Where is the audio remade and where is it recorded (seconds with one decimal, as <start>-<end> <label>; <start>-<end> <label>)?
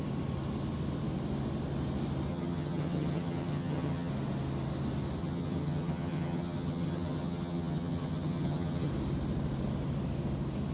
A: 0.0-2.3 recorded; 2.3-4.1 remade; 4.1-5.2 recorded; 5.2-8.9 remade; 8.9-10.7 recorded